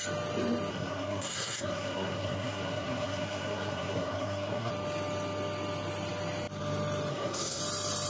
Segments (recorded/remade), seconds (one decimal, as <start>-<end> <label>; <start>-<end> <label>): 0.0-0.7 recorded; 0.7-4.7 remade; 4.7-7.1 recorded; 7.1-7.6 remade; 7.6-8.1 recorded